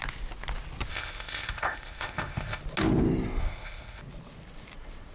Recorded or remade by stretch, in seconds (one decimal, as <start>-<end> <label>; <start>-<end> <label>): 0.0-0.9 recorded; 0.9-2.6 remade; 2.6-3.4 recorded; 3.4-4.0 remade; 4.0-5.1 recorded